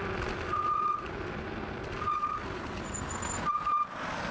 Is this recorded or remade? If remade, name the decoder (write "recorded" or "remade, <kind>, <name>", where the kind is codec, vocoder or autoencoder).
recorded